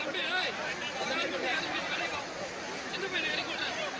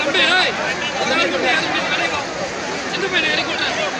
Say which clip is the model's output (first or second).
first